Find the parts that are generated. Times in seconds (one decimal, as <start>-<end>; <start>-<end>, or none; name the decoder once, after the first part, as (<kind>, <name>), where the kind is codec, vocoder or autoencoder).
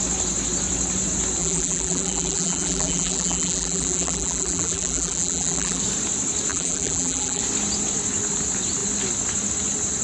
1.4-5.8 (vocoder, BigVGAN v2); 6.5-7.4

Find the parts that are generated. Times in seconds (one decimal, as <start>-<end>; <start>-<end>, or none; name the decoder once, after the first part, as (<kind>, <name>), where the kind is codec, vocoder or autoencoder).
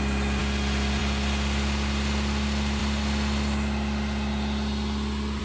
none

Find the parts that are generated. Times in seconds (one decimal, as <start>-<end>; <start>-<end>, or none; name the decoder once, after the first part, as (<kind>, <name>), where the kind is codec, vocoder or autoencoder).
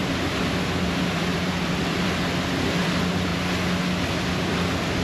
0.0-3.3 (vocoder, BigVGAN v2); 4.0-5.0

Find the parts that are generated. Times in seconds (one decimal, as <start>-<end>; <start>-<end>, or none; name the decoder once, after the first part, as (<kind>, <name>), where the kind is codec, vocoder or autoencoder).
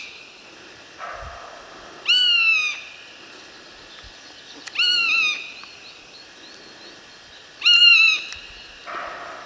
7.8-8.8 (vocoder, BigVGAN v2)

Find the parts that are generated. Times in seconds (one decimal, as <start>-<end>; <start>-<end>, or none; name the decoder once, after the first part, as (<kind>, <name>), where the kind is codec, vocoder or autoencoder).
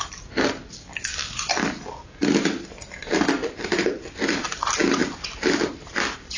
0.0-6.4 (vocoder, BigVGAN v2)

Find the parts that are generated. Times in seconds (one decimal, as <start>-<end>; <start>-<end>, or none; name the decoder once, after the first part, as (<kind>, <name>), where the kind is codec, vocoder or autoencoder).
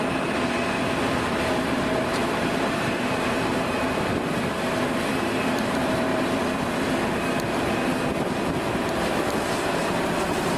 0.0-4.1 (vocoder, BigVGAN v2); 5.1-6.1; 7.1-7.9; 10.0-10.6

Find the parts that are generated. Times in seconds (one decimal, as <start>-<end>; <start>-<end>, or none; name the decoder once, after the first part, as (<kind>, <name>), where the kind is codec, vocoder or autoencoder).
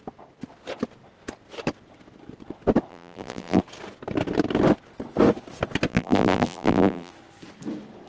2.9-3.6 (vocoder, BigVGAN v2); 5.9-7.1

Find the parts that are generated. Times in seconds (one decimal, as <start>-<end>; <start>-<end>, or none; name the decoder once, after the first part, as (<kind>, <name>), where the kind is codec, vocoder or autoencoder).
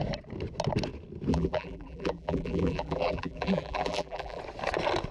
1.3-4.4 (vocoder, BigVGAN v2)